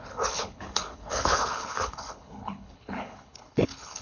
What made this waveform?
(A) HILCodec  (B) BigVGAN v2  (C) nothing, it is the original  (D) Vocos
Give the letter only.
A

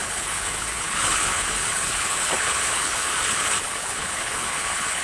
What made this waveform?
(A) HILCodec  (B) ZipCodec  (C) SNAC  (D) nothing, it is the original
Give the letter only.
A